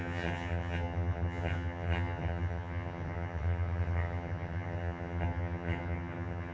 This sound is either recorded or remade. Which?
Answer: remade